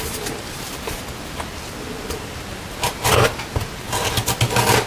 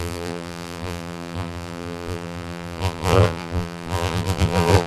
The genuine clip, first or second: first